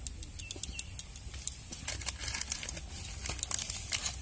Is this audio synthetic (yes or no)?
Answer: no